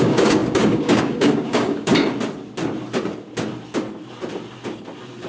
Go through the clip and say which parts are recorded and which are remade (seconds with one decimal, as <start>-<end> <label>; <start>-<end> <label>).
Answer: 0.0-1.9 remade; 1.9-5.3 recorded